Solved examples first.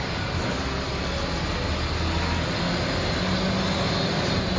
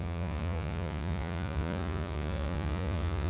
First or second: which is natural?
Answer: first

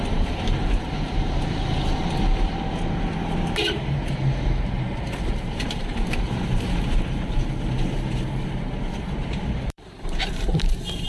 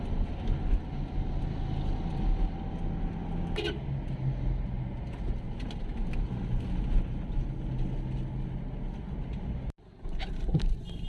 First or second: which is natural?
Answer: second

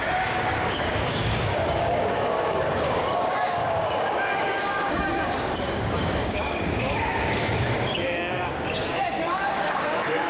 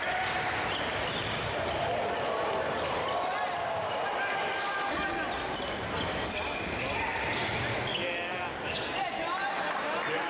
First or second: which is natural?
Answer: second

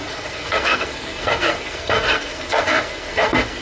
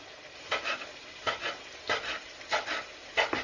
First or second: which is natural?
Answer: second